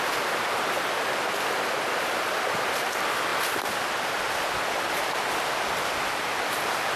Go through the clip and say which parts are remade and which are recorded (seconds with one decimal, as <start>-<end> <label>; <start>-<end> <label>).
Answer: 0.0-7.0 recorded